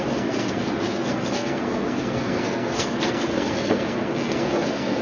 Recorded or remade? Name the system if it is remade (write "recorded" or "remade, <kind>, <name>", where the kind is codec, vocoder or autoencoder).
remade, codec, SNAC